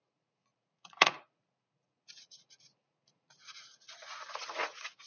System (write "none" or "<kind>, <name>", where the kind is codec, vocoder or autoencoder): vocoder, Vocos